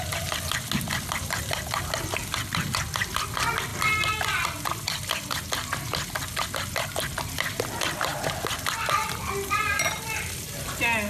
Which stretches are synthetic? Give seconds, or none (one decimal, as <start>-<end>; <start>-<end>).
none